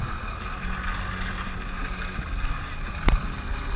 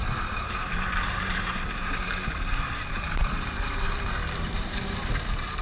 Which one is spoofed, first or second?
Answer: second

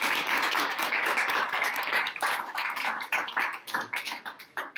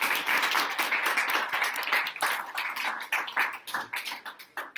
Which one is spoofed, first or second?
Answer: first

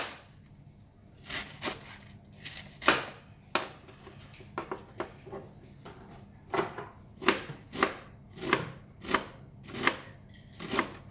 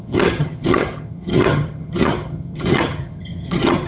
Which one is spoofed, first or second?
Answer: second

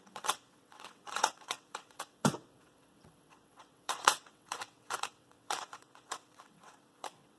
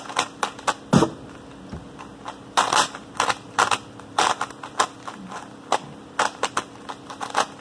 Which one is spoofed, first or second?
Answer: first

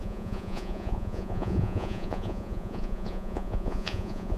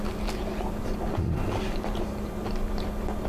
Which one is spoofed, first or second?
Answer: first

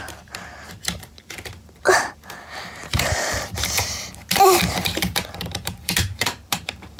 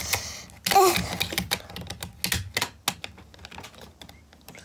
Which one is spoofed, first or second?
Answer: first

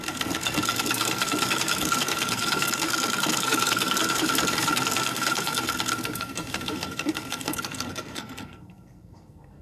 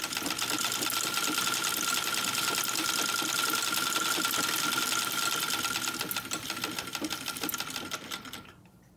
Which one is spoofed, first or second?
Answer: first